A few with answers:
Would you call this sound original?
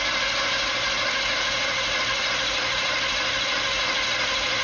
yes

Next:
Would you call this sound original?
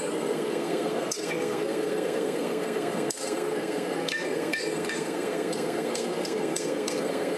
no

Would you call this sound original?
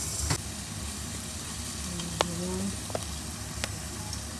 yes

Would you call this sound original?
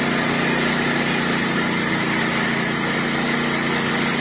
yes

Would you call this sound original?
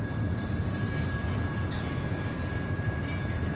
yes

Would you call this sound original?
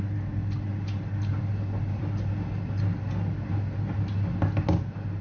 yes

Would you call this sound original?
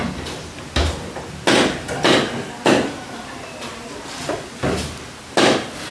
yes